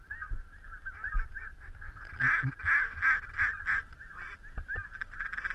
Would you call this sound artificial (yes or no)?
no